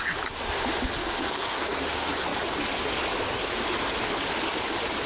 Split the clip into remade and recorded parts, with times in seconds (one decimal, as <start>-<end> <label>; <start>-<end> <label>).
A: 0.0-1.0 recorded; 1.0-1.8 remade; 1.8-5.1 recorded